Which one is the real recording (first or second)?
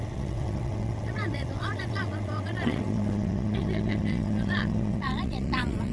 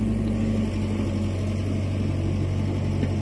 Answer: second